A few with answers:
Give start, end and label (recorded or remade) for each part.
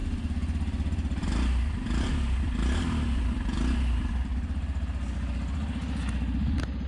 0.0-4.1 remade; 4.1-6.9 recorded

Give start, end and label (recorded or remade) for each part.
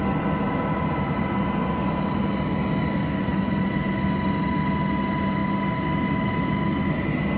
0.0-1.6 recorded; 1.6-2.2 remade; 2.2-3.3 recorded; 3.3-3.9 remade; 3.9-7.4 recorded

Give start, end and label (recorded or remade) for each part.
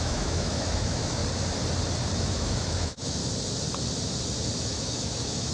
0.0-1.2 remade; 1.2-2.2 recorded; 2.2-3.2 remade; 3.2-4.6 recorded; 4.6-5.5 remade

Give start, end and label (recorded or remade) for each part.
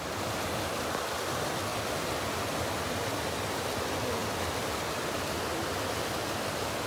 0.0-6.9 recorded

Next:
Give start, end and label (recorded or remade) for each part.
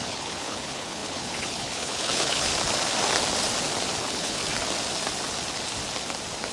0.0-2.5 remade; 2.5-4.0 recorded; 4.0-4.4 remade; 4.4-6.5 recorded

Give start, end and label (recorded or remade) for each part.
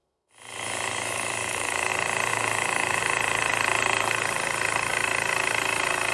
0.0-1.9 remade; 1.9-2.3 recorded; 2.3-3.0 remade; 3.0-6.1 recorded